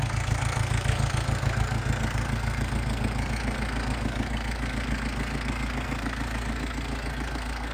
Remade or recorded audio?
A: remade